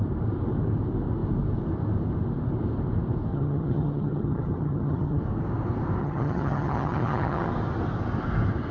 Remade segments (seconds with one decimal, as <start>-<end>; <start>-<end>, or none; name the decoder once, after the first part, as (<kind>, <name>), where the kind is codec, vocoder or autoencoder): 3.3-5.2 (vocoder, HiFi-GAN); 6.0-7.5